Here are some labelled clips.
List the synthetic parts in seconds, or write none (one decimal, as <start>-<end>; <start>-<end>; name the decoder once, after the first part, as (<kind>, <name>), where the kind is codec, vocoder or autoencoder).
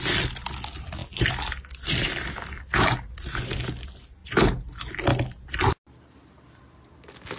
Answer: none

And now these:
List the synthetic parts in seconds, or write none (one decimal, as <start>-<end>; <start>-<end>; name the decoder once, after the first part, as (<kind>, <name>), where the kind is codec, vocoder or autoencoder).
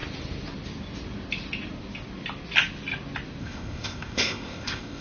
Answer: 3.4-5.0 (codec, ZipCodec)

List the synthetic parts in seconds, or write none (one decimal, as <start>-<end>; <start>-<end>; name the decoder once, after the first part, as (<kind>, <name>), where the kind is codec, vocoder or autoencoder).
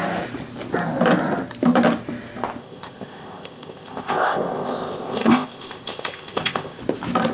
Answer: 2.6-6.8 (codec, ZipCodec)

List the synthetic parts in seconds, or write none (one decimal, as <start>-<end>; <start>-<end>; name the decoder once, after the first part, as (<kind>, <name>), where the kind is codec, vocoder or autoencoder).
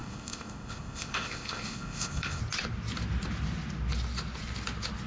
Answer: 0.0-2.4 (codec, ZipCodec)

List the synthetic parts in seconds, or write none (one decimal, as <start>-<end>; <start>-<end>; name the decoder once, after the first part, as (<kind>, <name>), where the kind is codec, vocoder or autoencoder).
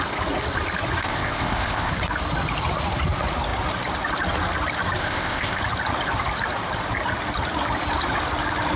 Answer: 1.0-1.9 (codec, ZipCodec); 5.0-5.6